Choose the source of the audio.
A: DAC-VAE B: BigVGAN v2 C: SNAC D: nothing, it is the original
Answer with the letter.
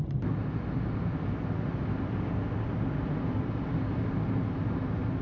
D